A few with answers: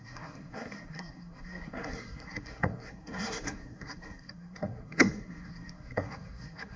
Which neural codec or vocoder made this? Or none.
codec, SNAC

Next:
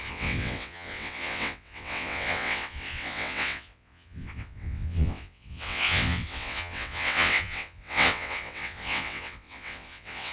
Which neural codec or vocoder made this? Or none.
vocoder, WaveNeXt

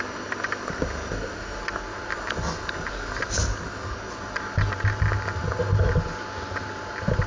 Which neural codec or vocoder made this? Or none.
none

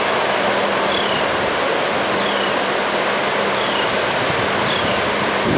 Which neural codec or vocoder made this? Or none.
none